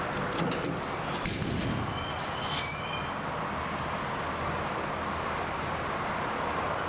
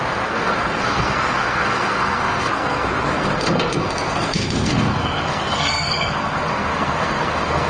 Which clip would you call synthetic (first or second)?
second